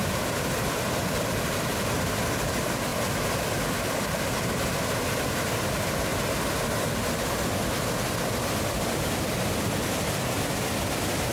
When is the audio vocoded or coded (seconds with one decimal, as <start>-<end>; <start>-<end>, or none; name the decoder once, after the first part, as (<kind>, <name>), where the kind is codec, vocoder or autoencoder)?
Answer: 0.0-2.9 (vocoder, BigVGAN v2); 3.4-6.1; 8.6-11.3